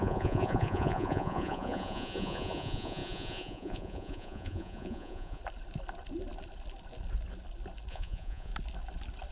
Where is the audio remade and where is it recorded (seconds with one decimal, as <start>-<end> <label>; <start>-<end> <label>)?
0.0-5.4 remade; 5.4-7.9 recorded; 7.9-8.5 remade; 8.5-9.3 recorded